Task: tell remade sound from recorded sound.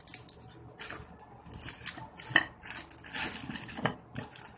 recorded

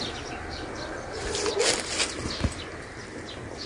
recorded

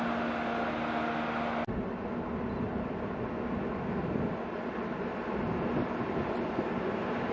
recorded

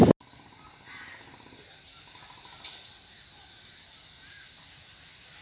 recorded